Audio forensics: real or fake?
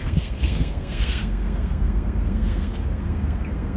fake